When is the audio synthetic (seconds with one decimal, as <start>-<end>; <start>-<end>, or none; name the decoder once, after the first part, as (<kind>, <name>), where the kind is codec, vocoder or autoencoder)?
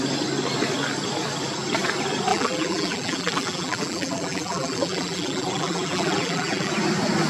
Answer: 2.3-6.7 (vocoder, BigVGAN v2)